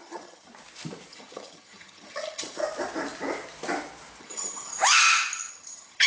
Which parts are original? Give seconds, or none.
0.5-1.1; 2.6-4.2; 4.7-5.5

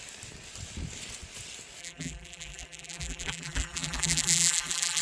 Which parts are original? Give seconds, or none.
0.0-1.8